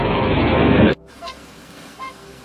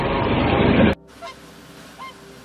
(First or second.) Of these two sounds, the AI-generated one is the first